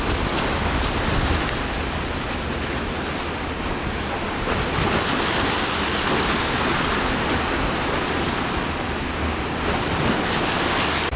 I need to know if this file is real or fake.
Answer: real